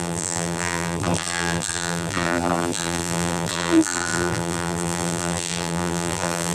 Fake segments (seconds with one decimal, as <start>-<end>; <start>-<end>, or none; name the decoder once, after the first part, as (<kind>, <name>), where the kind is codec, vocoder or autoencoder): 0.0-6.5 (vocoder, BigVGAN v2)